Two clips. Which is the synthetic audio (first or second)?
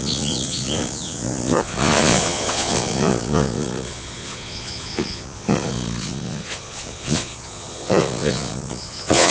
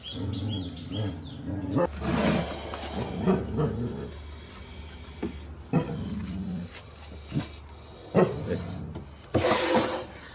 first